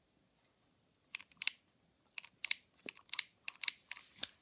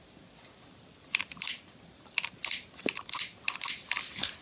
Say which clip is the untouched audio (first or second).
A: first